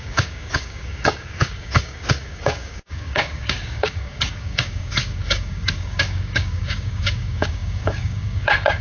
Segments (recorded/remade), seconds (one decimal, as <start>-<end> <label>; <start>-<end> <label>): 0.0-8.8 remade